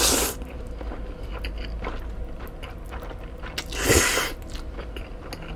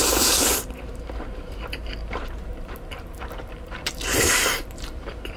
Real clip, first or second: first